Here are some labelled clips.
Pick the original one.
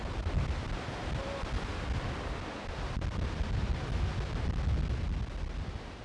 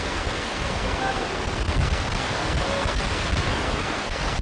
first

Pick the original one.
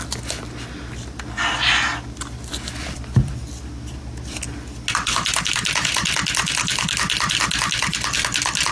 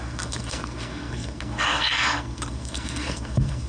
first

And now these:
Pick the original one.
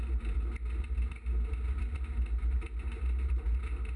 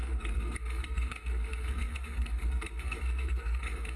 first